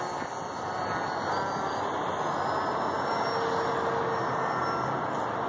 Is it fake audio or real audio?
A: real